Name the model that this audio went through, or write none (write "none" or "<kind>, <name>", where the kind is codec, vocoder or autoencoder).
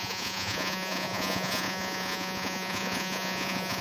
vocoder, Vocos